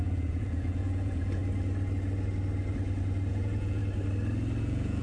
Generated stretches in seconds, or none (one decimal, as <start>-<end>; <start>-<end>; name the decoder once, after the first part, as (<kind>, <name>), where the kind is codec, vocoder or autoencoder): 0.0-1.4 (vocoder, Vocos); 3.3-3.8; 4.6-5.0

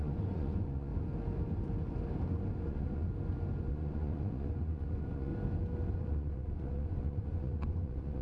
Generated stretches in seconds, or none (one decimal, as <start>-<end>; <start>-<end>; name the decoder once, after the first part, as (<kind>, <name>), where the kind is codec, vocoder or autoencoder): 0.0-0.9 (vocoder, Vocos); 2.6-3.1; 3.7-5.3; 5.9-8.2

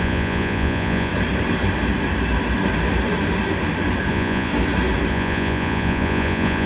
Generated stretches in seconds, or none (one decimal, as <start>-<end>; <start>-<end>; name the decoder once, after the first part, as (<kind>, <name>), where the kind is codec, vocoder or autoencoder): 0.0-1.1 (vocoder, Vocos); 4.1-4.5; 5.1-6.7